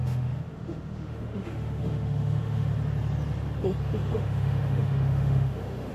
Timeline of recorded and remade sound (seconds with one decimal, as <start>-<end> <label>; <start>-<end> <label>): 0.0-2.7 remade; 2.7-3.8 recorded; 3.8-5.9 remade